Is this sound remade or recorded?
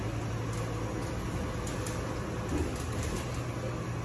recorded